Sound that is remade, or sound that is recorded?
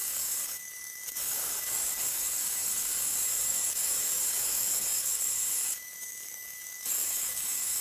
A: remade